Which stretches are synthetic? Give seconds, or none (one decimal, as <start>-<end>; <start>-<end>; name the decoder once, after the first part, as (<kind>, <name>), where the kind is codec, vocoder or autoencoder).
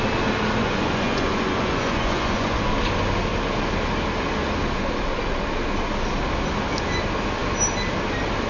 0.6-2.6 (vocoder, Vocos)